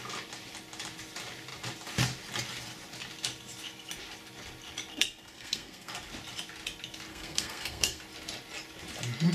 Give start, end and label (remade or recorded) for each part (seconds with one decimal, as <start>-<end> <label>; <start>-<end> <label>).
0.0-4.9 recorded; 4.9-5.9 remade; 5.9-7.1 recorded; 7.1-8.0 remade; 8.0-9.3 recorded